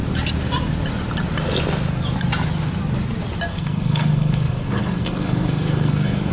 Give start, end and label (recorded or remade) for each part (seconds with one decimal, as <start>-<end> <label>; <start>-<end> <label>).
0.0-3.5 recorded; 3.5-6.3 remade